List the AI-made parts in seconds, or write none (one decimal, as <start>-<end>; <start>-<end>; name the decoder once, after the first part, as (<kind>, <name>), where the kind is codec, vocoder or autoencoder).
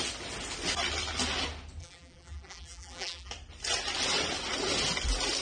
1.8-3.3 (vocoder, BigVGAN v2)